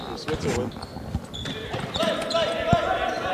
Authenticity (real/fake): real